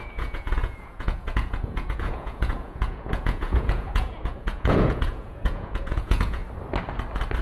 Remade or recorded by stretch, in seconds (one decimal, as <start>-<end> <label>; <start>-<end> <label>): 0.0-6.4 remade; 6.4-7.4 recorded